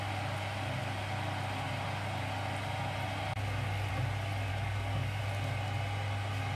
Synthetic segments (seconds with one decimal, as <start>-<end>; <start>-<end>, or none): 4.5-5.2